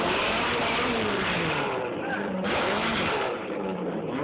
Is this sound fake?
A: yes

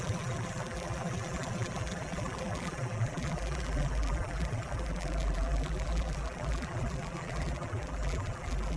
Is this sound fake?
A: yes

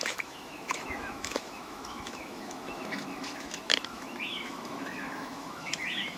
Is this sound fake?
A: yes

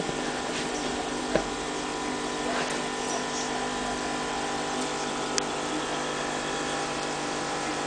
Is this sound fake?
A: no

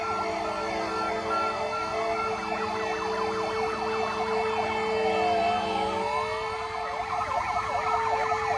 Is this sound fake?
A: no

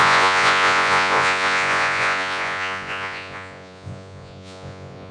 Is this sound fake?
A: yes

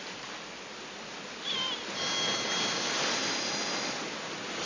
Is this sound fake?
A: no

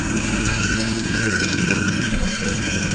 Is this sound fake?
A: yes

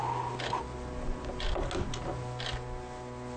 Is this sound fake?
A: no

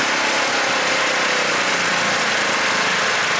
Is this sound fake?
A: no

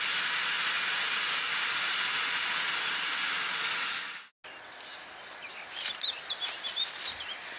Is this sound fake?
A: no